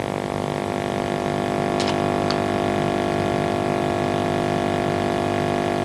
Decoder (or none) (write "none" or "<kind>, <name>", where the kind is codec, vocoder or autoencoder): vocoder, BigVGAN v2